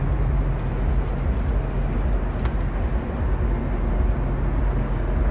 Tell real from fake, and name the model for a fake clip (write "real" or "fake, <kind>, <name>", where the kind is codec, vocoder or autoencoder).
real